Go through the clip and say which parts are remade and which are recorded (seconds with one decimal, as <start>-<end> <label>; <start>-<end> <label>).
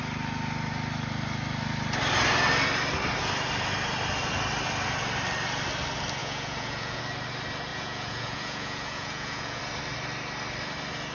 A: 0.0-6.2 recorded; 6.2-7.0 remade; 7.0-7.7 recorded; 7.7-9.6 remade; 9.6-11.1 recorded